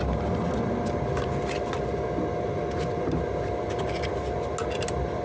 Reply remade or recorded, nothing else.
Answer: recorded